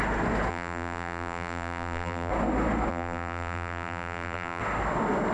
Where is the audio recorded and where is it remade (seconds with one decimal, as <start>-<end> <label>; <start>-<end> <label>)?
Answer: 0.0-0.5 recorded; 0.5-2.3 remade; 2.3-2.9 recorded; 2.9-4.6 remade; 4.6-5.3 recorded

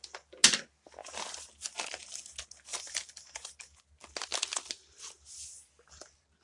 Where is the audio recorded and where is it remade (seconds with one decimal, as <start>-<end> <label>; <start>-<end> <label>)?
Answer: 0.0-1.0 recorded; 1.0-1.5 remade; 1.5-2.7 recorded; 2.7-3.6 remade; 3.6-6.4 recorded

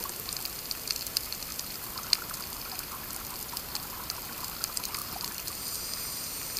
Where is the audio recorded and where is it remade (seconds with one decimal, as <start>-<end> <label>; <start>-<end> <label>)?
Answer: 0.0-5.0 recorded; 5.0-6.6 remade

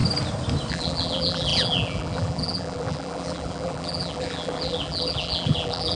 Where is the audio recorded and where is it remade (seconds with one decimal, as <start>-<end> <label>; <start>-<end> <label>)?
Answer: 0.0-0.7 recorded; 0.7-6.0 remade

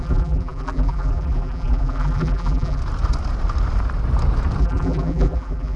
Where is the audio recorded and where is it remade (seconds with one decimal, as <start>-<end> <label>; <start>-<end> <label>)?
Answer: 0.0-2.8 remade; 2.8-4.6 recorded; 4.6-5.8 remade

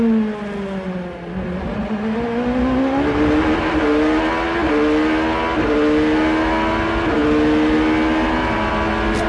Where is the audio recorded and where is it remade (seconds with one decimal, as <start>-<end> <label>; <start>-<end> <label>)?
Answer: 0.0-9.3 recorded